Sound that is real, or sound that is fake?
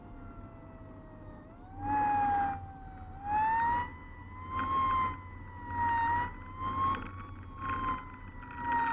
real